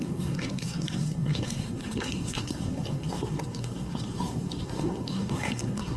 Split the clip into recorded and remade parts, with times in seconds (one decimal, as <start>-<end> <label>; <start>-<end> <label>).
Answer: 0.0-6.0 remade